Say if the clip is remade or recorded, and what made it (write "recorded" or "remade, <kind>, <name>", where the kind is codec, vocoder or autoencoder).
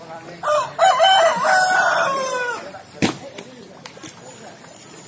remade, vocoder, BigVGAN v2